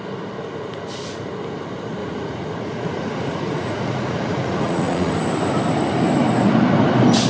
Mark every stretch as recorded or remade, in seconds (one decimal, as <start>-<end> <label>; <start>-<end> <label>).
0.0-2.0 recorded; 2.0-5.1 remade; 5.1-7.3 recorded